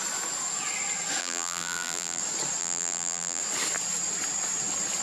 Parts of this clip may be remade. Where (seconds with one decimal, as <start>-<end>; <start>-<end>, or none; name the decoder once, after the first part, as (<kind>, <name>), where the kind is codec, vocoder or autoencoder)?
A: 1.2-2.2 (vocoder, BigVGAN v2); 2.6-3.4